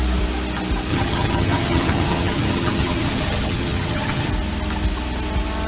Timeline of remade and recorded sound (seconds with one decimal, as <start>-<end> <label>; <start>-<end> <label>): 0.0-0.9 recorded; 0.9-4.3 remade; 4.3-5.7 recorded